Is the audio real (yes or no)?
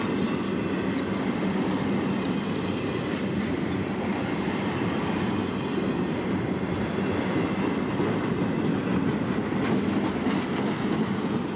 yes